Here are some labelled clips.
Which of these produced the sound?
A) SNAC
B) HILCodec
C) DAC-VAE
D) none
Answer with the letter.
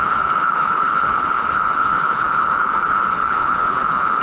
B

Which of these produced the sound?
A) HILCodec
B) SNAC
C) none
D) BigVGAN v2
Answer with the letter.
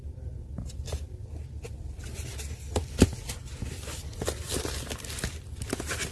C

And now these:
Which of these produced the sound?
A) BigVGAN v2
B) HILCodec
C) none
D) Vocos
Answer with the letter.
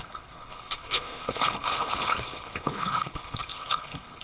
B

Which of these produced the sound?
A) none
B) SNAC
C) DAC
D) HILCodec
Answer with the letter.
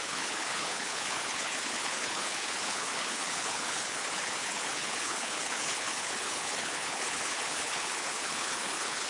D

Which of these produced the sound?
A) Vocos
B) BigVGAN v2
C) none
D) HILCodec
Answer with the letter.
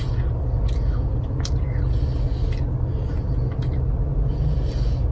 C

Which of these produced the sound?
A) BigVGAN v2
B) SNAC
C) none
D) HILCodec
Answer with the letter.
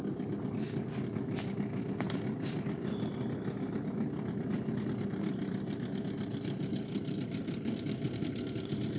C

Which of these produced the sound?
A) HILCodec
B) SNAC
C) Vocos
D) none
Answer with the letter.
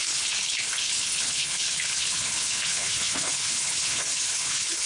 A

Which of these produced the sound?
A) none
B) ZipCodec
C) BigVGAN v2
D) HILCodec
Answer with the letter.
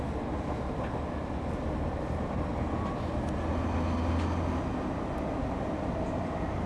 A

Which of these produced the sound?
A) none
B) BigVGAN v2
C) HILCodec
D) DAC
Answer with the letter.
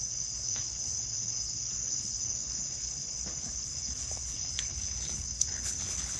C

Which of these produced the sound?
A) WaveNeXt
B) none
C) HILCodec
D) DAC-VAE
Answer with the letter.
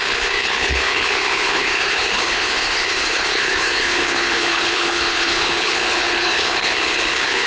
C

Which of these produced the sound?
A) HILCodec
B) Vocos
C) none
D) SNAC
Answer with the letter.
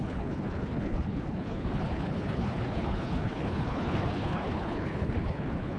A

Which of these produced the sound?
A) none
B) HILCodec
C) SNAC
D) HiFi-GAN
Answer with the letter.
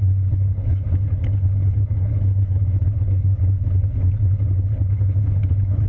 B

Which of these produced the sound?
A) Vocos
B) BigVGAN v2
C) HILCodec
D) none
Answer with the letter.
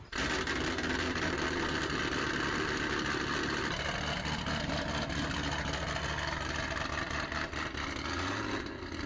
D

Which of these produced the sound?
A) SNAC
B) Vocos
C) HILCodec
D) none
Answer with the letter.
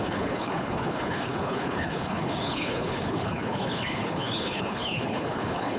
C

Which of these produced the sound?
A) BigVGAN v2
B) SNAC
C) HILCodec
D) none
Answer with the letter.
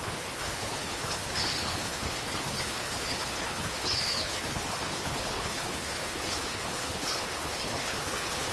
C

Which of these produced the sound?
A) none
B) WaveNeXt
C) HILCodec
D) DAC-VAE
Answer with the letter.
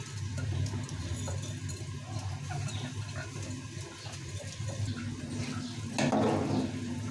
A